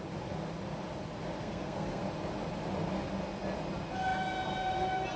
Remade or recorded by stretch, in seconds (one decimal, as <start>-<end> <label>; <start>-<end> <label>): 0.0-1.4 recorded; 1.4-2.0 remade; 2.0-5.2 recorded